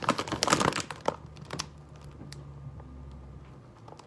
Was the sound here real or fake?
real